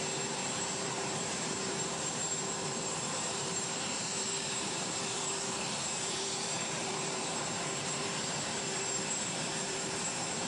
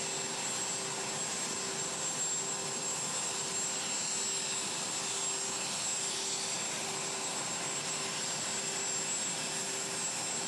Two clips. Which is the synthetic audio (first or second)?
first